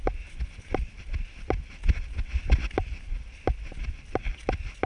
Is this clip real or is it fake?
real